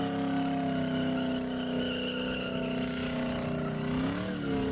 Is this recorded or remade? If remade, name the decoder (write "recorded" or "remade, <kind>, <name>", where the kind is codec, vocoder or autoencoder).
recorded